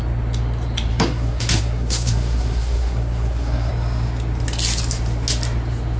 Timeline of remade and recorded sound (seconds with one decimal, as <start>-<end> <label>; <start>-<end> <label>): 0.0-0.9 recorded; 0.9-3.7 remade; 3.7-6.0 recorded